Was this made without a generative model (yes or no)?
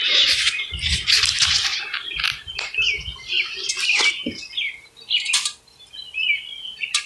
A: yes